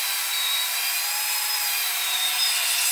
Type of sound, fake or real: fake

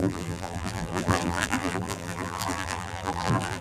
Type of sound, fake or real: fake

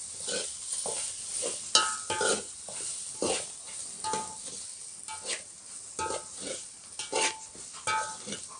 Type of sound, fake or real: real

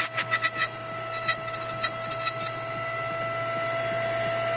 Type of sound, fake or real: real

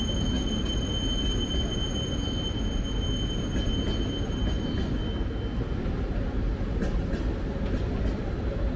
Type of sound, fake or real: real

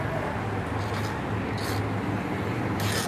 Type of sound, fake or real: real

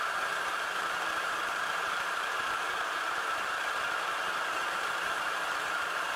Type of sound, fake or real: fake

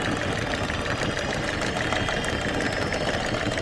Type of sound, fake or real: real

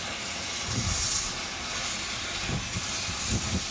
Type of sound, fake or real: real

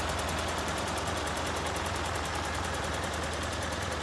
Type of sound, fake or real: fake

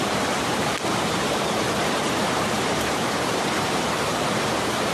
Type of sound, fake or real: fake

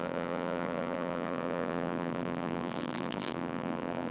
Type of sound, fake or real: fake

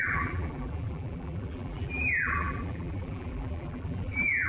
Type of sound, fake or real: fake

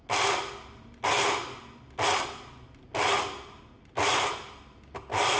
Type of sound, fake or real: real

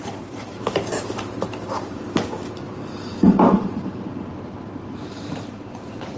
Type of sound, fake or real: fake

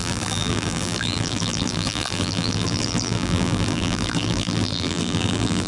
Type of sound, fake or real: fake